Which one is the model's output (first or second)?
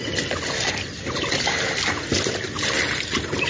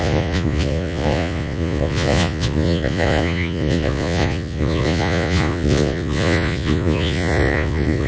second